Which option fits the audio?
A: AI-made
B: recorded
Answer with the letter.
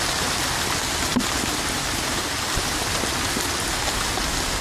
B